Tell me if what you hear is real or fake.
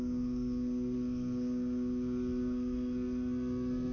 fake